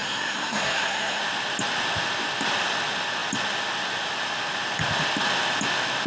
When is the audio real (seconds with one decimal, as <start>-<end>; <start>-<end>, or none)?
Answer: 1.2-6.1